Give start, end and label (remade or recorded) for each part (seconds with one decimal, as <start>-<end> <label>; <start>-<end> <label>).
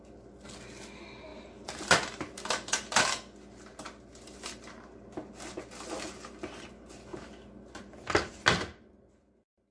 0.0-9.7 recorded